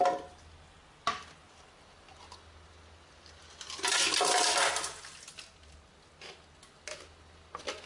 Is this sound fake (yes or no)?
no